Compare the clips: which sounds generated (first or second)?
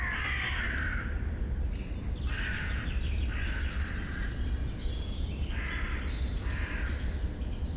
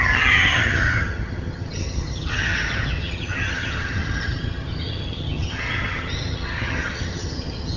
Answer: second